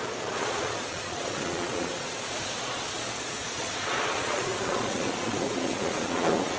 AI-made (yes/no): yes